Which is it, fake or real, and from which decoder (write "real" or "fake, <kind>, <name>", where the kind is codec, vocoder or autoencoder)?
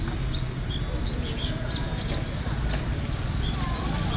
real